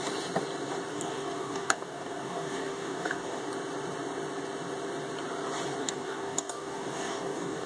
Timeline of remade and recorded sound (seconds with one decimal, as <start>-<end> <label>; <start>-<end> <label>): 0.0-0.9 recorded; 0.9-3.4 remade; 3.4-5.8 recorded; 5.8-7.7 remade